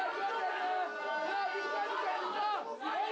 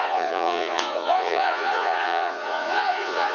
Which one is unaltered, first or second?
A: first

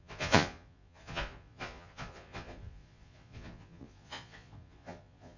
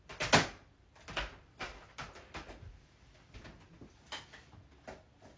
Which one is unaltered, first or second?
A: second